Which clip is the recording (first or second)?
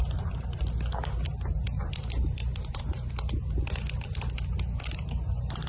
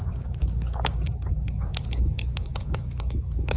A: first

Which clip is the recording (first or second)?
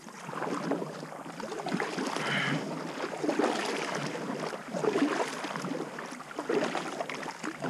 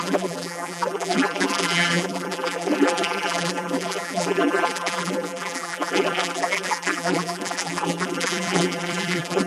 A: first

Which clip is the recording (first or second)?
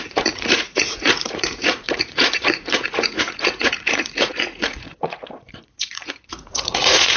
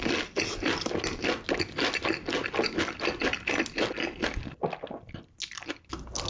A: second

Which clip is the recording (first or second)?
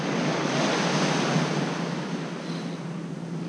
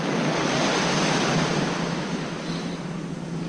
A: first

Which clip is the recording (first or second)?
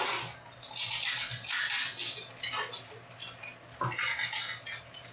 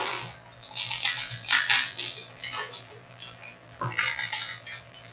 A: first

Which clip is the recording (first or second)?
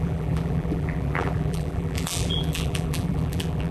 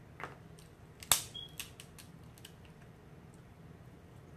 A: second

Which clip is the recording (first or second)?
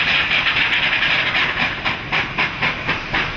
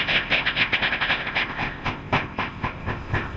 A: first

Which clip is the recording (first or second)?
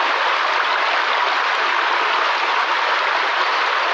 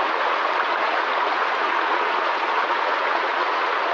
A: first